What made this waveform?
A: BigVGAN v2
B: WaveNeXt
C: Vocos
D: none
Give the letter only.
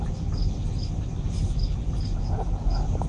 D